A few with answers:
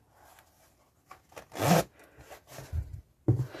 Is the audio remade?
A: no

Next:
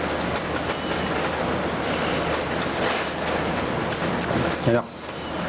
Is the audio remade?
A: no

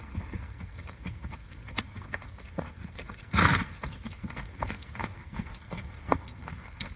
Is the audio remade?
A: yes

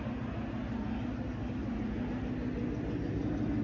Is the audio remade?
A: no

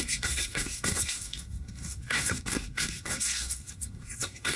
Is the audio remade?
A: yes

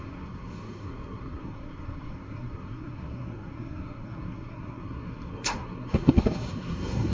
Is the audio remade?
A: yes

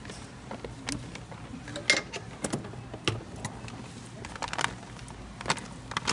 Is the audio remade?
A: no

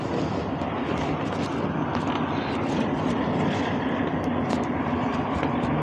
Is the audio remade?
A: no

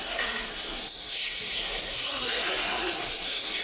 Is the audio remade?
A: yes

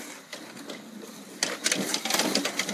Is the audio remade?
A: no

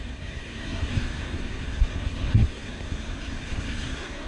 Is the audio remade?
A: yes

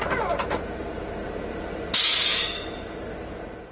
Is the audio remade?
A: no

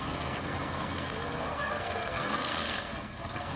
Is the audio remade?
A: yes